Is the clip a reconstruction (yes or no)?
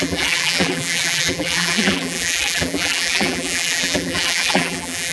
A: yes